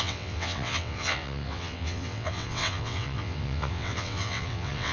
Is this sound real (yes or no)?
no